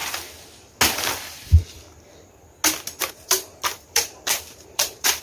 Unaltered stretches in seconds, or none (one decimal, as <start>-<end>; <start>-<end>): 0.0-3.1